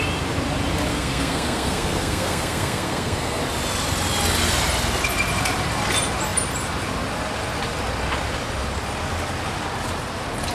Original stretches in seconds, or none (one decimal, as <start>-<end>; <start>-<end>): 0.0-0.9; 3.4-10.5